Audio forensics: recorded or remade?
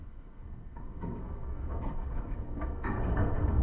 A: remade